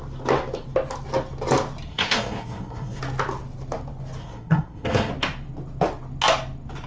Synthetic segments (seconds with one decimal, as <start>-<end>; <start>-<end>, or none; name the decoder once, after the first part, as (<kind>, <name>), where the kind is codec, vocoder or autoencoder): 1.9-3.0 (codec, SNAC); 4.2-5.1

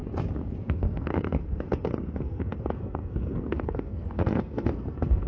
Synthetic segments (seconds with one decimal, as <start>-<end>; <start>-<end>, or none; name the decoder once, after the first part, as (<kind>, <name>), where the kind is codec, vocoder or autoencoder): 0.6-5.3 (codec, SNAC)

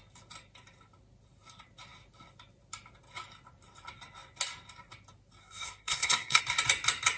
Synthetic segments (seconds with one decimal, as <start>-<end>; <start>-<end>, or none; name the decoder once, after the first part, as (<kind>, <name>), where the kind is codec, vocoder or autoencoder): 5.4-6.4 (codec, SNAC)

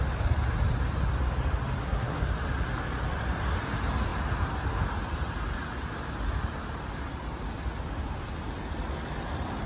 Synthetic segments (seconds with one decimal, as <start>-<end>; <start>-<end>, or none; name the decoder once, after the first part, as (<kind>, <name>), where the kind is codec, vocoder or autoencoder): 1.8-2.3 (codec, SNAC)

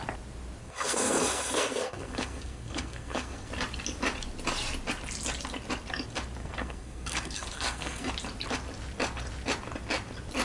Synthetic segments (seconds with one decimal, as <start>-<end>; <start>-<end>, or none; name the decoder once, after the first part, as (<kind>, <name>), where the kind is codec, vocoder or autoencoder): 0.6-3.5 (codec, SNAC); 6.4-8.1